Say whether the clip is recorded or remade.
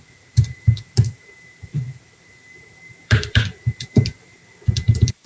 remade